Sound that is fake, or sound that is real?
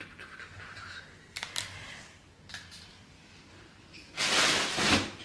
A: real